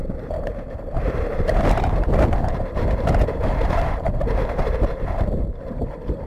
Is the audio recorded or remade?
remade